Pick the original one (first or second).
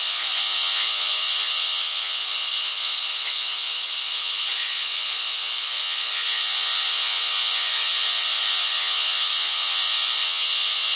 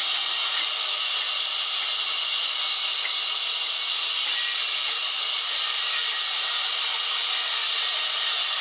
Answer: second